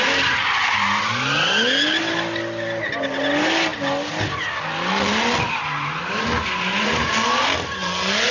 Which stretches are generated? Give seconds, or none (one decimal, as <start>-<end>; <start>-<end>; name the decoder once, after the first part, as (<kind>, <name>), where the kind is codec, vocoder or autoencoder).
none